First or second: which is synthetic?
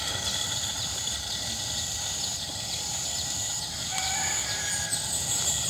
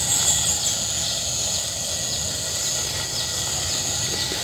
first